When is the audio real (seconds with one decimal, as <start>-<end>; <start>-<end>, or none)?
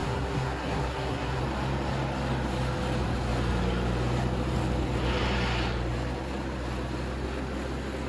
1.4-8.1